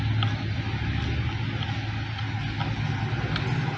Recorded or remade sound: recorded